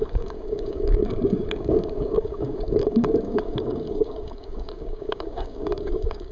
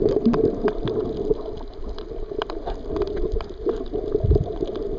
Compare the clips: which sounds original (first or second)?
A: second